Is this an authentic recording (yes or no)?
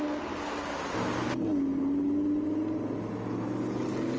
yes